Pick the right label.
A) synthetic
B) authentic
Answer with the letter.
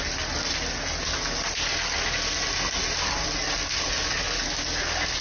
B